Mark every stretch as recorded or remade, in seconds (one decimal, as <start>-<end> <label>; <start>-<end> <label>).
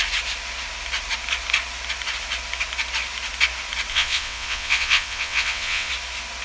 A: 0.0-3.9 recorded; 3.9-5.9 remade; 5.9-6.4 recorded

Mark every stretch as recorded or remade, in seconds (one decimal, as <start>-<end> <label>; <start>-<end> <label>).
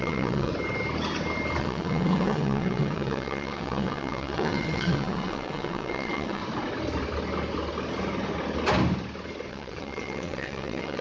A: 0.0-0.5 remade; 0.5-1.6 recorded; 1.6-6.4 remade; 6.4-9.5 recorded; 9.5-11.0 remade